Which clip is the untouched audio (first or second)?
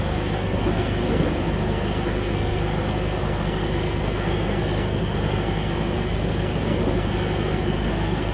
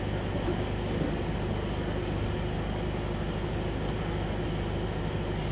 second